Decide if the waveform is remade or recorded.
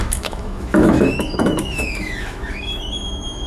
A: remade